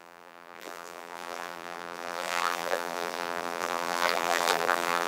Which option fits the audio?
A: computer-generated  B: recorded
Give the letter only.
A